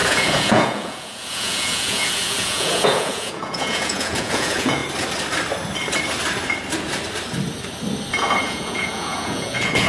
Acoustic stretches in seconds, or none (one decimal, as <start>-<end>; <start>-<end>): 4.8-8.1